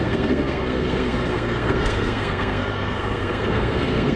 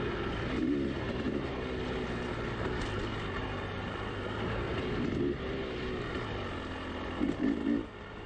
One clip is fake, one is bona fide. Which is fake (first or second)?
first